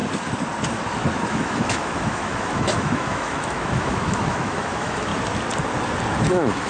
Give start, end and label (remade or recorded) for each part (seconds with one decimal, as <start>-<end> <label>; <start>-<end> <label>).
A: 0.0-1.3 recorded; 1.3-5.1 remade; 5.1-6.3 recorded; 6.3-6.7 remade